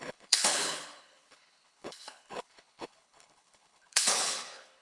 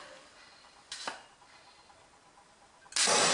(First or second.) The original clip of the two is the second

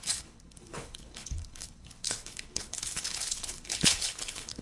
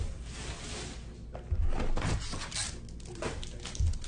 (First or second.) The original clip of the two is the second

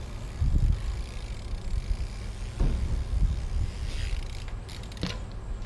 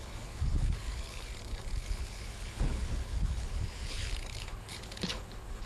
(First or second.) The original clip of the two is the first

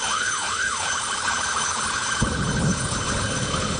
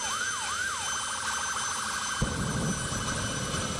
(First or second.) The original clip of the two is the second